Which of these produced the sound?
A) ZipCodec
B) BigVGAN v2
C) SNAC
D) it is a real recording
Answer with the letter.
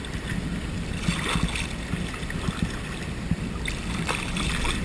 D